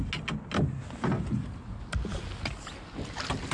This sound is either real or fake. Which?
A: real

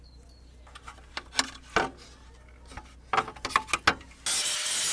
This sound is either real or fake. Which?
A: real